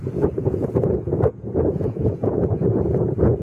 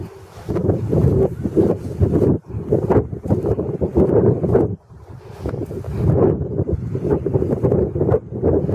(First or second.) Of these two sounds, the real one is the second